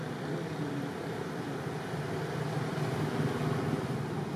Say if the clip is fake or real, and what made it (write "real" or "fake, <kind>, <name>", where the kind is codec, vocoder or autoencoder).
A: real